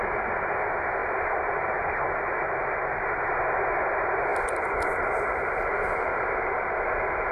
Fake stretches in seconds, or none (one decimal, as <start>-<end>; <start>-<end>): 1.0-1.5; 4.3-6.1